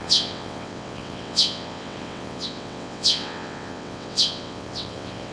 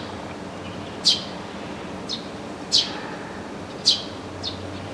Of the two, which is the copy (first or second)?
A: first